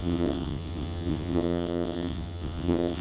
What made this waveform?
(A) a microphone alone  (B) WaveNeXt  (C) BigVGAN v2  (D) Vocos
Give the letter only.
B